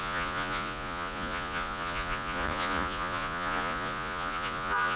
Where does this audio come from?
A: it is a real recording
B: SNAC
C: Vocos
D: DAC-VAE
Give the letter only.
C